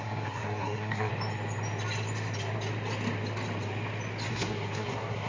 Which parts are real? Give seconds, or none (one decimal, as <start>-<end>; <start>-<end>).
1.1-4.3

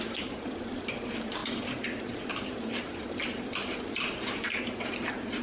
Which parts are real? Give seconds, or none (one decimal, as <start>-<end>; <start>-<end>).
none

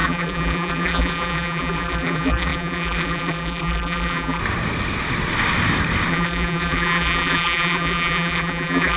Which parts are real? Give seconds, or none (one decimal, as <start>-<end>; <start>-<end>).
4.4-6.1

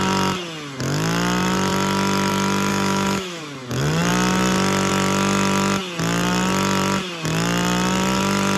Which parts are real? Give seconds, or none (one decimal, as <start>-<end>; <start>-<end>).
0.0-2.7; 3.4-8.6

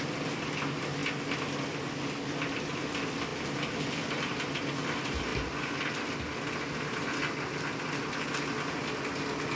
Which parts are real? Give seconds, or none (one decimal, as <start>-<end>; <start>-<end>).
0.0-9.6